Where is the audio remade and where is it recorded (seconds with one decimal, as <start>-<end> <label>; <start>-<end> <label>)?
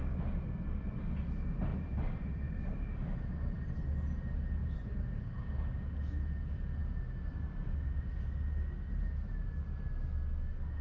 0.0-1.7 recorded; 1.7-2.6 remade; 2.6-4.6 recorded; 4.6-5.2 remade; 5.2-10.8 recorded